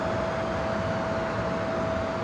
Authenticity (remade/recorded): recorded